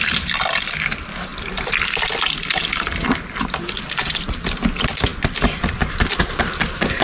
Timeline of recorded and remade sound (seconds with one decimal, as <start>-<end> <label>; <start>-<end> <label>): 0.0-7.0 recorded